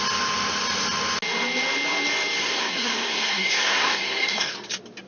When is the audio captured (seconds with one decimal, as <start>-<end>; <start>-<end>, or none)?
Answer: 0.0-2.4; 4.5-5.1